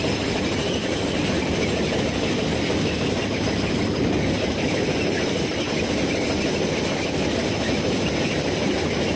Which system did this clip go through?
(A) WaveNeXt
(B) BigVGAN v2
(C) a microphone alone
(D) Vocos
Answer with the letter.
C